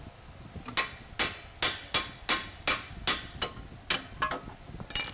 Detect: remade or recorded recorded